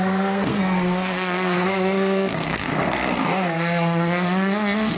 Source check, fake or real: fake